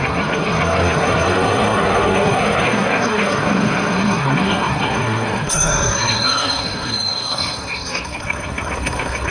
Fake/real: fake